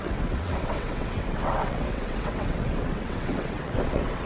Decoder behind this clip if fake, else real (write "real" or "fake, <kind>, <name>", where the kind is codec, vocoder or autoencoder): fake, vocoder, WaveNeXt